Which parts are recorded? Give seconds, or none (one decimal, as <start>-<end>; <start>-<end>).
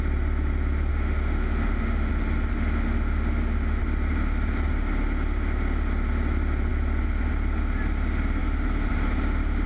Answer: 0.0-0.9; 2.1-2.5; 3.8-9.7